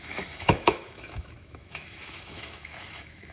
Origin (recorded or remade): remade